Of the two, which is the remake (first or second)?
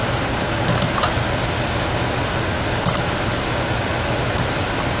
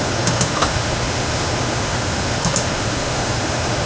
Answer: second